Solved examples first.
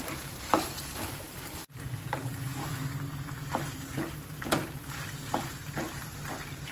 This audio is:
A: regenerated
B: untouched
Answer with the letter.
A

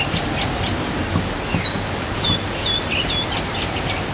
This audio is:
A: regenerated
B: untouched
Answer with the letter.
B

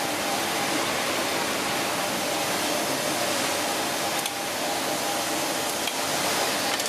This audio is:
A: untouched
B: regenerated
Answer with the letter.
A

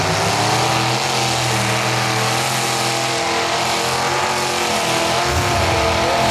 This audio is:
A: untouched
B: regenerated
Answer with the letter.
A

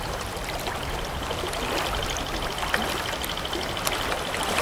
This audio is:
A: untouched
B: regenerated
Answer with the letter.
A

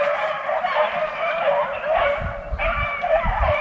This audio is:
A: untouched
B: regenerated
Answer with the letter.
B